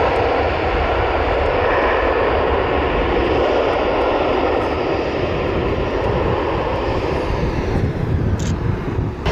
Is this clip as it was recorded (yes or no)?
no